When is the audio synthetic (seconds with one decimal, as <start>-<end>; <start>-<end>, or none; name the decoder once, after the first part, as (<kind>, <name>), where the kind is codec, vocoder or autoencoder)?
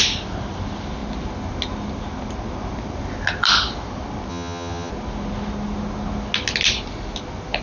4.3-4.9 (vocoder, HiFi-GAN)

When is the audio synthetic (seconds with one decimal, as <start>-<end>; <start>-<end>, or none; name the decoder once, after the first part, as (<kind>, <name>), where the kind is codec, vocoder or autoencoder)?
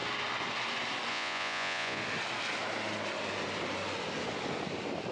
1.1-2.0 (vocoder, Vocos)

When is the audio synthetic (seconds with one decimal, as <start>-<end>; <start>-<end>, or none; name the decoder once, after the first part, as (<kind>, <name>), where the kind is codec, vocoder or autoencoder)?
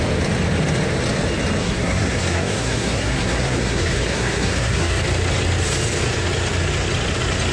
1.6-5.0 (codec, SNAC)